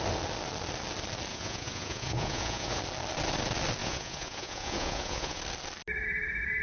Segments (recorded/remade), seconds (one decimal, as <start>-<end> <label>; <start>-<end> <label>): 0.0-1.3 recorded; 1.3-2.8 remade; 2.8-3.8 recorded; 3.8-5.4 remade; 5.4-6.6 recorded